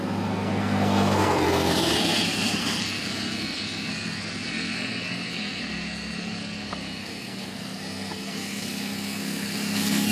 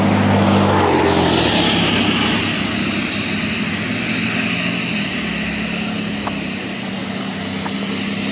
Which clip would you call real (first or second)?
second